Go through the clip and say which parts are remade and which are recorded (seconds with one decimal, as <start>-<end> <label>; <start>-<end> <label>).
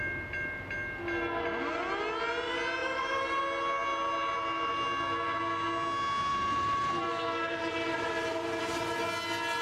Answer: 0.0-2.8 recorded; 2.8-3.4 remade; 3.4-3.9 recorded; 3.9-5.4 remade; 5.4-6.3 recorded; 6.3-8.1 remade; 8.1-9.6 recorded